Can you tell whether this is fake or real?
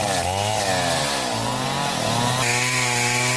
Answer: real